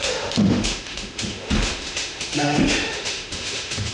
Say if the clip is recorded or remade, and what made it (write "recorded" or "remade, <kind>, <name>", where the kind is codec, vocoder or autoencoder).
remade, autoencoder, DAC-VAE